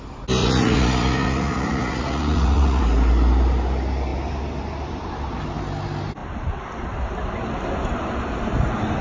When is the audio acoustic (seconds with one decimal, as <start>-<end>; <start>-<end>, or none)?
0.0-0.4; 2.8-9.0